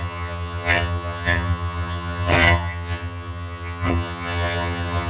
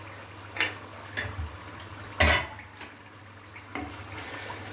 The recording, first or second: second